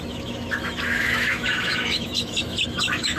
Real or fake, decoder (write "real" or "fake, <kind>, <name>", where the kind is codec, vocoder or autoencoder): fake, autoencoder, DAC-VAE